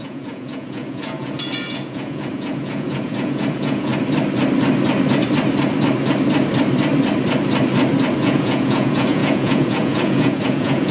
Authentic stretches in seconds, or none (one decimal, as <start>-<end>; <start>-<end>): 3.9-8.2